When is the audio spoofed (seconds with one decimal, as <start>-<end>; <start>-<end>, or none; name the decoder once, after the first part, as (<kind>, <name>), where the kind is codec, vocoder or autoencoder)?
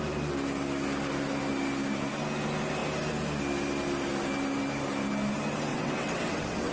5.7-6.7 (vocoder, WaveNeXt)